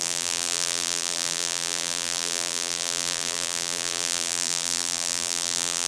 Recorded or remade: remade